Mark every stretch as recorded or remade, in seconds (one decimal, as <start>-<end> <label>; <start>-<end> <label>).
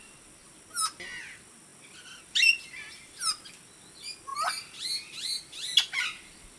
0.0-6.6 recorded